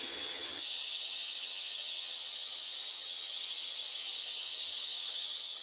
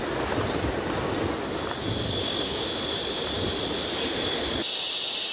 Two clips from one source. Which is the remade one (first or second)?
first